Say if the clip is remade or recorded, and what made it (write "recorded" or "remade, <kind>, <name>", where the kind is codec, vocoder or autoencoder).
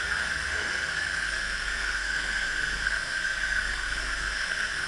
remade, codec, SNAC